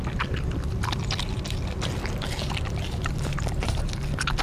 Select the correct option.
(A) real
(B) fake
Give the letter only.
B